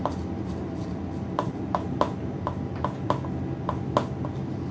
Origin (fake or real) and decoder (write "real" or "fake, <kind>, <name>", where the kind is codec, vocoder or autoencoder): real